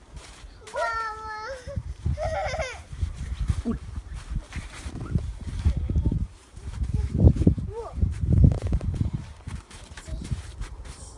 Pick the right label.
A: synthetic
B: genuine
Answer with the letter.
A